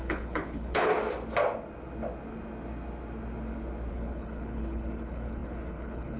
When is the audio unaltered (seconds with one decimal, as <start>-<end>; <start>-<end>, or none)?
0.9-3.9